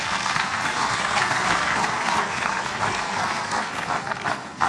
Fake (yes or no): yes